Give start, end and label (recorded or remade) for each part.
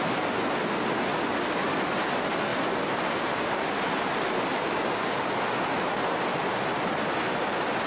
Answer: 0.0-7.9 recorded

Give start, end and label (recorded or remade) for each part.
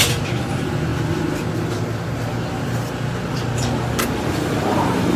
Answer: 0.0-0.5 recorded; 0.5-0.9 remade; 0.9-4.0 recorded; 4.0-5.2 remade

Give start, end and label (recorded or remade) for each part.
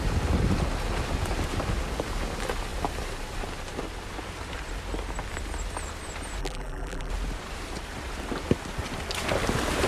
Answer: 0.0-6.4 recorded; 6.4-7.1 remade; 7.1-9.9 recorded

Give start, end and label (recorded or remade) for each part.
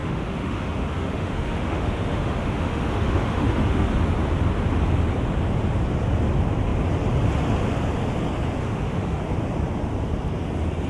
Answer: 0.0-3.9 remade; 3.9-8.6 recorded; 8.6-9.2 remade; 9.2-10.9 recorded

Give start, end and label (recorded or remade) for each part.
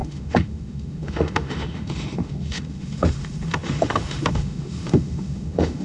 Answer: 0.0-5.8 remade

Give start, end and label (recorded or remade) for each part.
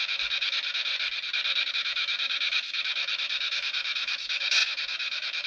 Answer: 0.0-0.9 remade; 0.9-1.7 recorded; 1.7-5.5 remade